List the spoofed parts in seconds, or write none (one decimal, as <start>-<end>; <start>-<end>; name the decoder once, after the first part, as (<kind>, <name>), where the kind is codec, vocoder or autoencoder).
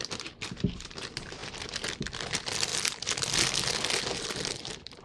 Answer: 0.0-2.7 (vocoder, BigVGAN v2); 4.0-5.0